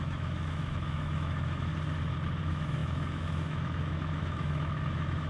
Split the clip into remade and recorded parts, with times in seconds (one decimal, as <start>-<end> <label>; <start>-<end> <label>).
0.0-1.7 remade; 1.7-2.4 recorded; 2.4-5.3 remade